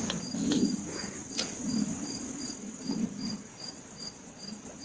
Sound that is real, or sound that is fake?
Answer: real